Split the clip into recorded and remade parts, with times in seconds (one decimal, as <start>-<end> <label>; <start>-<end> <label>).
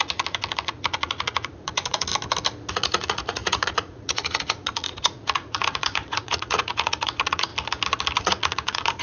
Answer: 0.0-2.1 remade; 2.1-2.7 recorded; 2.7-7.5 remade; 7.5-8.2 recorded; 8.2-9.0 remade